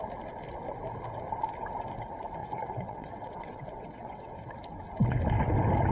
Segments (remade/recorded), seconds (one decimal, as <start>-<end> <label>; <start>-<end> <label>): 0.0-2.4 recorded; 2.4-4.5 remade; 4.5-5.9 recorded